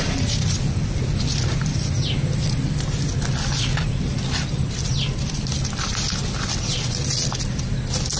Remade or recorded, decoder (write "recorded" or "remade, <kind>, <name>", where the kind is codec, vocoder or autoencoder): recorded